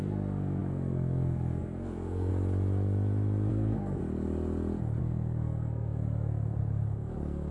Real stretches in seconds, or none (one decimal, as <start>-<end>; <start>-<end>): 2.3-3.5; 4.0-5.0